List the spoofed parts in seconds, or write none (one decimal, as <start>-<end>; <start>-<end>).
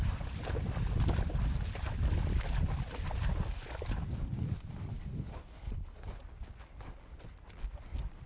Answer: 4.9-6.2